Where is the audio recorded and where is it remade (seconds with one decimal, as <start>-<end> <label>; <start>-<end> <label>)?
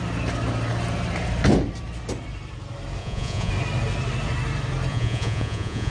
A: 0.0-3.0 recorded; 3.0-3.5 remade; 3.5-4.9 recorded; 4.9-5.9 remade